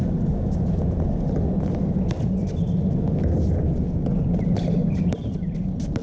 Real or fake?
real